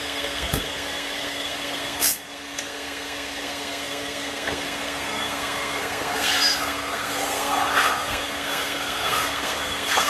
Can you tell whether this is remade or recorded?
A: remade